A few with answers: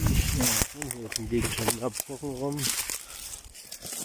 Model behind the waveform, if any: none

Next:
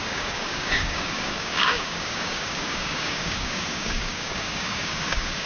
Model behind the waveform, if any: codec, DAC